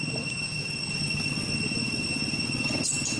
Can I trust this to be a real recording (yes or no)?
yes